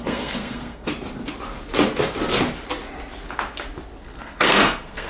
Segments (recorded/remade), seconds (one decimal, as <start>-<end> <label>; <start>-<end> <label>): 0.0-0.9 remade; 0.9-4.0 recorded; 4.0-5.1 remade